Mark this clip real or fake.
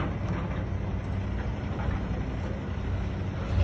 real